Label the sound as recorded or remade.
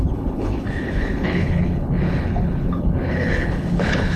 remade